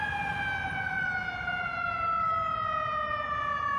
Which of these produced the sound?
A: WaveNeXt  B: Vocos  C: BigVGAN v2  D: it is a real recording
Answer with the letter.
D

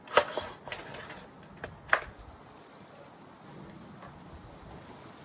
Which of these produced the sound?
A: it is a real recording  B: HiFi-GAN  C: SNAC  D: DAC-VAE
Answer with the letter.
A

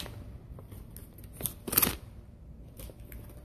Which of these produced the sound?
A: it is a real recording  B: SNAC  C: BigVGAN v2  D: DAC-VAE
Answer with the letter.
A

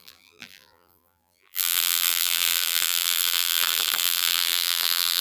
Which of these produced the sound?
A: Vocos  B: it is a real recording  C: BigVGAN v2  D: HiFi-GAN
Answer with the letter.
C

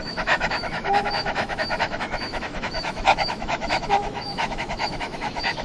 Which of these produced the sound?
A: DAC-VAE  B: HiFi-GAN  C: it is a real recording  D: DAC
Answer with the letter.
A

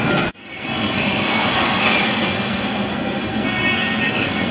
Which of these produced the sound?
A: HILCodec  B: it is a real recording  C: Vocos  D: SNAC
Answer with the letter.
D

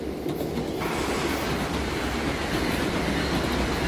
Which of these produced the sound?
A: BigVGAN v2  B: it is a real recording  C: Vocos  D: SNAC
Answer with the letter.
B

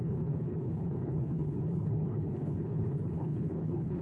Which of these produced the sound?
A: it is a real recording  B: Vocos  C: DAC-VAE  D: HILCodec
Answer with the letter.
D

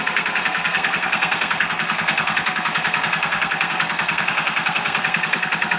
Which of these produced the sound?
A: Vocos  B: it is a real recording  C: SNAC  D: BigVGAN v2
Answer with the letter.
C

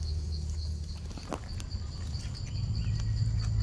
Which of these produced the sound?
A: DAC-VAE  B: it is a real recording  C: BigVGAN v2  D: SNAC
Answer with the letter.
B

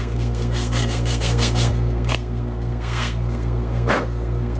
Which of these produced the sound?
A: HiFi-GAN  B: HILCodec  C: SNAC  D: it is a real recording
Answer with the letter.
C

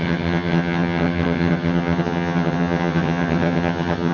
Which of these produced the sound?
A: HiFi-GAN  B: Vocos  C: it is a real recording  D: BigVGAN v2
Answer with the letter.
A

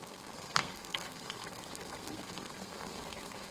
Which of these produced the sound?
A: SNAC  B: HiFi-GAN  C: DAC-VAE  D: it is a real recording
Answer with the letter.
A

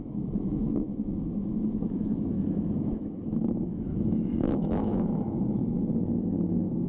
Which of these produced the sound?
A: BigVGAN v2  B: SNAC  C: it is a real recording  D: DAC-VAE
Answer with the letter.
D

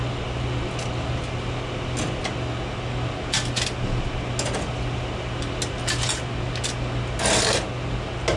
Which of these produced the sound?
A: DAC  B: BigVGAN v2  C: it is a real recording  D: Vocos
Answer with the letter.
C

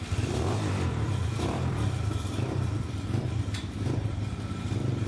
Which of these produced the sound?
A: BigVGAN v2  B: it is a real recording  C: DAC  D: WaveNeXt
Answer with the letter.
A